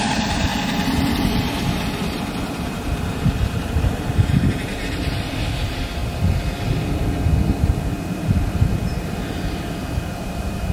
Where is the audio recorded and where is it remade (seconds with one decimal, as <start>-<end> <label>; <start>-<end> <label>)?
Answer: 0.0-0.5 remade; 0.5-3.1 recorded; 3.1-6.0 remade; 6.0-7.6 recorded; 7.6-10.7 remade